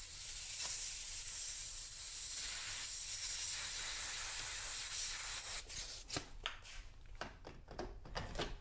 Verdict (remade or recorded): recorded